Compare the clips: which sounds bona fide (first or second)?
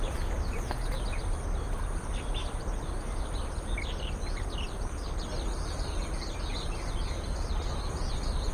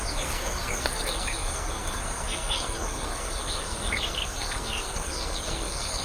first